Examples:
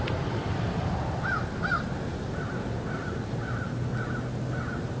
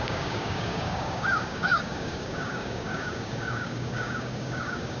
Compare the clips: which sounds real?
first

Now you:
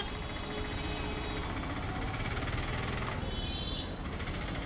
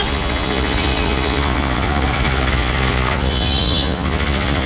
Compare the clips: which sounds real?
first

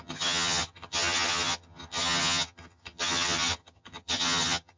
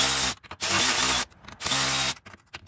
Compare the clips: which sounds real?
second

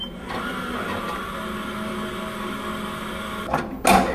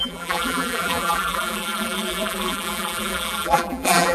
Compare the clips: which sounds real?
first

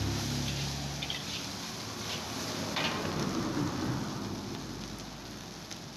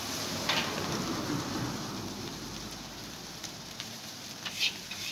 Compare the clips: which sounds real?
first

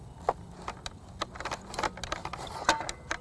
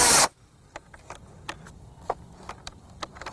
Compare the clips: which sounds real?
first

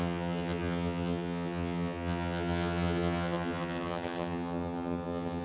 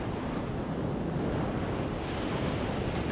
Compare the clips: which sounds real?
second